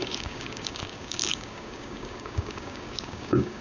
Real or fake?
fake